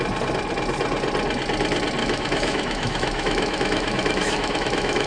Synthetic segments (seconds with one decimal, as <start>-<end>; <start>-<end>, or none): 2.0-5.1